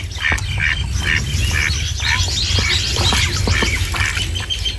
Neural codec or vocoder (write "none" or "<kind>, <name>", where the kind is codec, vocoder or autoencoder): none